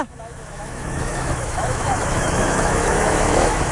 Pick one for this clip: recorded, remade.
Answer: remade